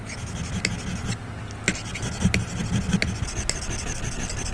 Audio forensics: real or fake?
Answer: real